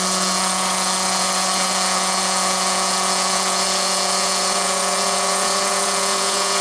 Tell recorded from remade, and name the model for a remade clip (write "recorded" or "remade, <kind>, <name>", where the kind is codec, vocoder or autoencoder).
remade, vocoder, Vocos